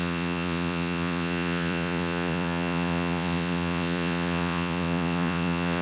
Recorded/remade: remade